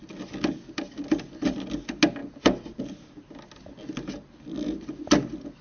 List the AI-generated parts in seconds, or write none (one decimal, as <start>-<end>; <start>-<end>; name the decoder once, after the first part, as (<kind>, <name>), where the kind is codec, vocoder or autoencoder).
none